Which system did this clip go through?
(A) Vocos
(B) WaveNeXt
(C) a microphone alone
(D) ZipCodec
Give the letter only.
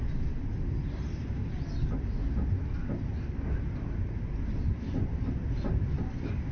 C